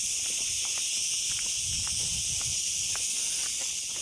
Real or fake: real